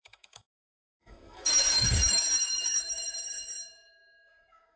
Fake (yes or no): yes